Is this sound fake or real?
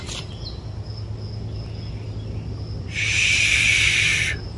real